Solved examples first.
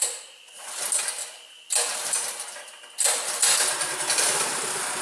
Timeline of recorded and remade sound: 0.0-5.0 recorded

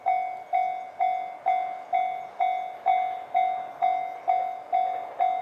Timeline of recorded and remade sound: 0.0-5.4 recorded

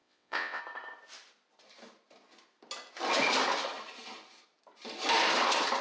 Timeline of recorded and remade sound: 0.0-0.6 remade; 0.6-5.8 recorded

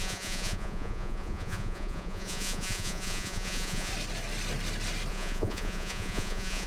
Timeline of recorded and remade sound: 0.0-3.9 remade; 3.9-5.1 recorded; 5.1-6.7 remade

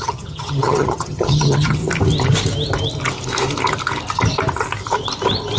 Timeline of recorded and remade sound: 0.0-1.8 remade; 1.8-5.6 recorded

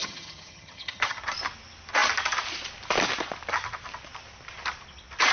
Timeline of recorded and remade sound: 0.0-1.2 remade; 1.2-5.3 recorded